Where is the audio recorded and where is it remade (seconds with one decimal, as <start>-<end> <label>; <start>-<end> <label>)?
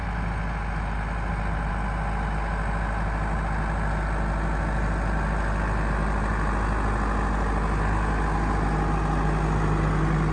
0.0-10.3 recorded